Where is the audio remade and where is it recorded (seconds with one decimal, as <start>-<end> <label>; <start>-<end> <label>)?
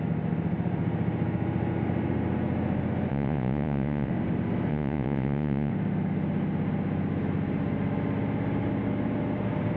0.0-3.1 recorded; 3.1-4.1 remade; 4.1-4.7 recorded; 4.7-5.7 remade; 5.7-9.8 recorded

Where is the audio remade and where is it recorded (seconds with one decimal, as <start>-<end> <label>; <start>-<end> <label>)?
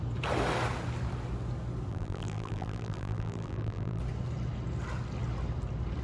0.0-1.9 recorded; 1.9-4.0 remade; 4.0-6.0 recorded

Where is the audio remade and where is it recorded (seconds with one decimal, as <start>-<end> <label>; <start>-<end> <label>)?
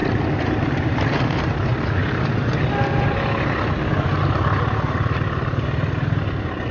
0.0-2.0 recorded; 2.0-2.5 remade; 2.5-6.7 recorded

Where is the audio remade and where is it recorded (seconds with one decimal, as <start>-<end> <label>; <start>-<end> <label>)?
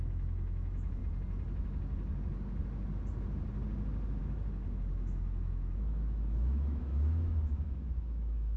0.0-1.0 remade; 1.0-4.2 recorded; 4.2-8.6 remade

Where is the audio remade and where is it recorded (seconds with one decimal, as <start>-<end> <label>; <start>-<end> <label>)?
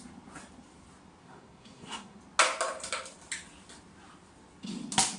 0.0-1.2 recorded; 1.2-2.2 remade; 2.2-5.2 recorded